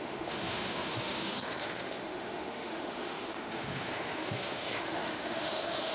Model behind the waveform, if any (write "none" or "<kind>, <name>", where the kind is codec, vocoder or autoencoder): autoencoder, DAC-VAE